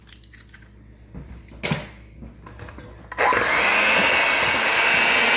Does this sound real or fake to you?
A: real